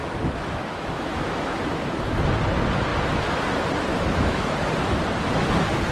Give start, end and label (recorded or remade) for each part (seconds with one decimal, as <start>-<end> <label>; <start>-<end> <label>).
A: 0.0-2.2 remade; 2.2-3.9 recorded; 3.9-4.7 remade; 4.7-5.9 recorded